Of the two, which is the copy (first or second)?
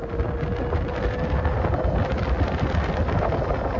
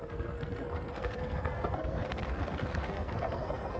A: second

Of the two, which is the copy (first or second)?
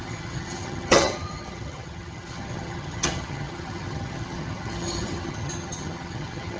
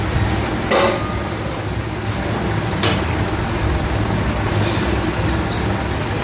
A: first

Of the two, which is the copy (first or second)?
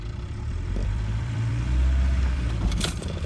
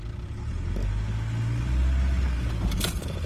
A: first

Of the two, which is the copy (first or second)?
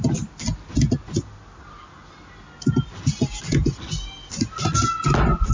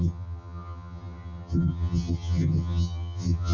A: second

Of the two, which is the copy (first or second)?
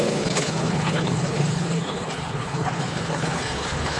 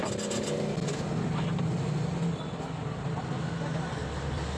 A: first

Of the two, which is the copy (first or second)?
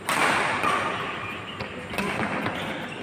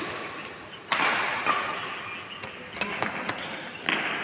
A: first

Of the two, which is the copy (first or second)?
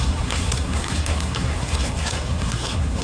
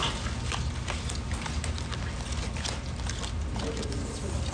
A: first